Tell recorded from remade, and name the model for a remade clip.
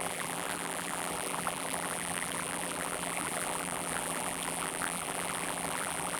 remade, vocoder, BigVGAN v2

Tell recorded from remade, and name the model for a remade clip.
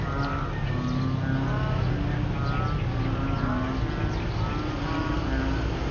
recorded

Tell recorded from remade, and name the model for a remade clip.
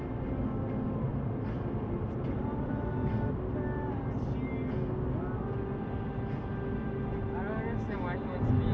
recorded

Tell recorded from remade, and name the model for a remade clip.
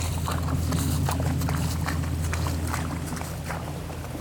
recorded